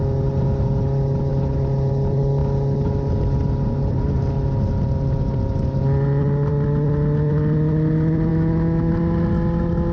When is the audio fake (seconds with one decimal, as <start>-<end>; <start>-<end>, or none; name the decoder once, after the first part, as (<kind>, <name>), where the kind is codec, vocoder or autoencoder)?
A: 8.3-8.9 (autoencoder, DAC-VAE)